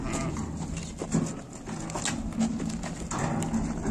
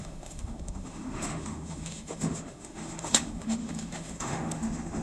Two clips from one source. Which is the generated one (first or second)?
second